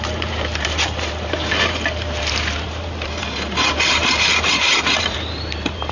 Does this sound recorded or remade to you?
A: remade